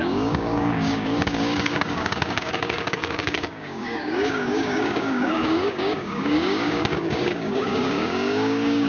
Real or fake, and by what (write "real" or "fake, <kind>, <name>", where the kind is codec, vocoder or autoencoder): fake, codec, DAC